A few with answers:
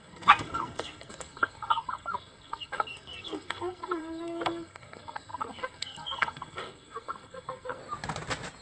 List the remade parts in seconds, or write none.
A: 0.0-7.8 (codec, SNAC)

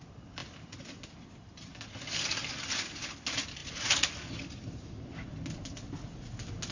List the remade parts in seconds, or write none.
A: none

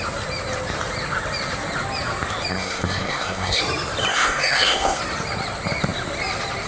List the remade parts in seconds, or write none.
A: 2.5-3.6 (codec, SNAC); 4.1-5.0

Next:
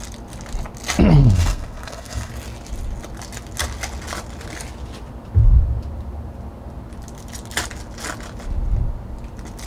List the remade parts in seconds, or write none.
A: 1.2-2.3 (codec, SNAC)

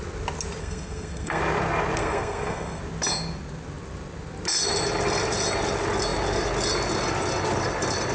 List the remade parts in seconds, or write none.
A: 0.6-1.4 (codec, SNAC); 2.0-2.8